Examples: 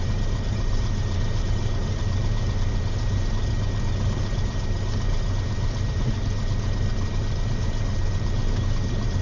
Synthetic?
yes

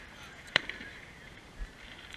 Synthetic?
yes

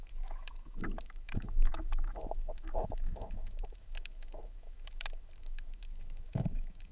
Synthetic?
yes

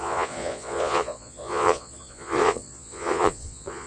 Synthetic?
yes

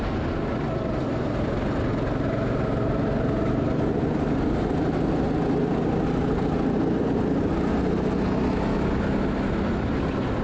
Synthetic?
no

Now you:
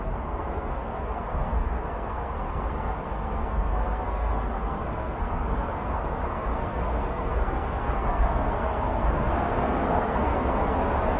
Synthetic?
yes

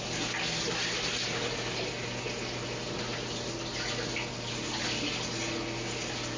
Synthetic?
no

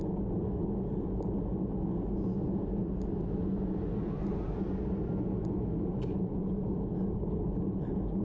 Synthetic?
no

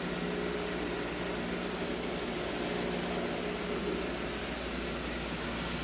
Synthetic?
no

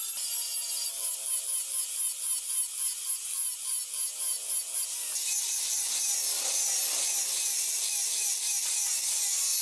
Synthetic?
no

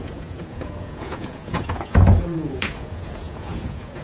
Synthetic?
yes